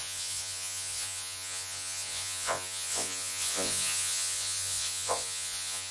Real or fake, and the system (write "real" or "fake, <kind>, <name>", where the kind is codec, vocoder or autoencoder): fake, vocoder, Vocos